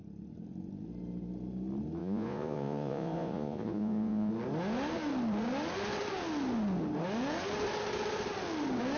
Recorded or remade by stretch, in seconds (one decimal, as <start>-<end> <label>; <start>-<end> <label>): 0.0-2.0 recorded; 2.0-4.3 remade; 4.3-9.0 recorded